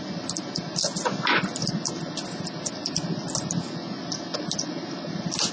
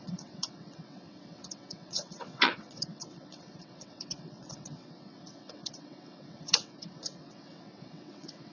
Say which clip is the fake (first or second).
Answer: second